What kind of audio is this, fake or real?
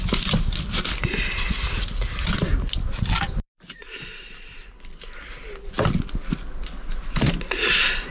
real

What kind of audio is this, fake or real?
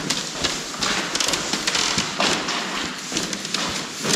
real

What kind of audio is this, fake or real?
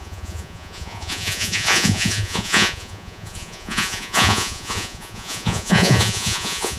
fake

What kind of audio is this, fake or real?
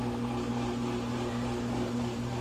real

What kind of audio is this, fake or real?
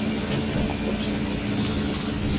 real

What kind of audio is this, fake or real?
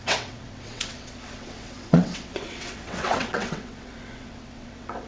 fake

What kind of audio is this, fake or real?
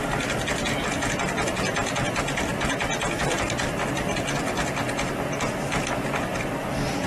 real